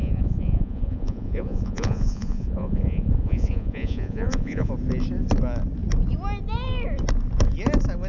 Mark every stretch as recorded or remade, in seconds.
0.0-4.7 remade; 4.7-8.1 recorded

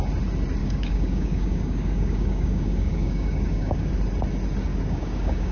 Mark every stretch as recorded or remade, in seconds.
0.0-0.6 recorded; 0.6-3.9 remade; 3.9-4.7 recorded; 4.7-5.5 remade

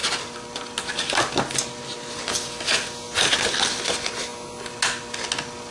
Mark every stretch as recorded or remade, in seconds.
0.0-5.7 recorded

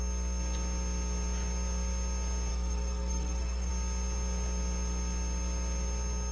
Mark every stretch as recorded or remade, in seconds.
0.0-2.5 recorded; 2.5-3.7 remade; 3.7-6.3 recorded

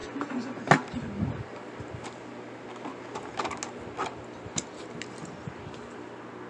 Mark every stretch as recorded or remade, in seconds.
0.0-0.6 remade; 0.6-6.5 recorded